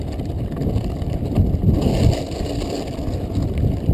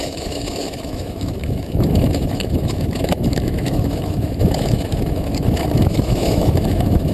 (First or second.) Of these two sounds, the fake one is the second